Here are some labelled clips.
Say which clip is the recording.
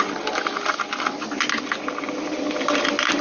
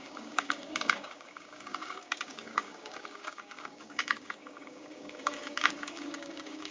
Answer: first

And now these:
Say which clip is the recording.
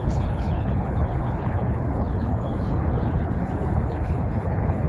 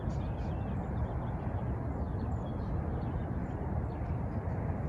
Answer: second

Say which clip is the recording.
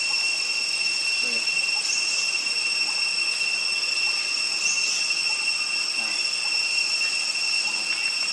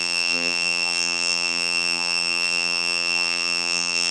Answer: first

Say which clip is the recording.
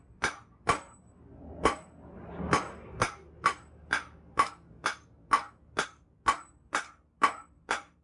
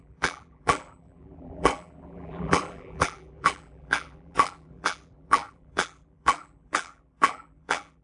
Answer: first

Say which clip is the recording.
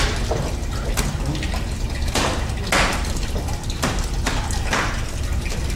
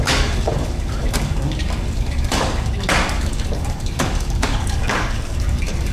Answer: first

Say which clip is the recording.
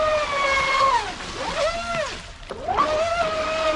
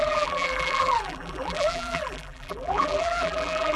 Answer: first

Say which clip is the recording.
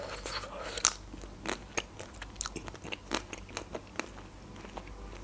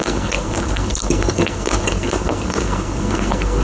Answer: first